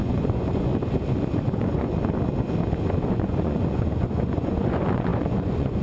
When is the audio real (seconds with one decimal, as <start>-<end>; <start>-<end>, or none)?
0.7-1.5; 1.9-3.1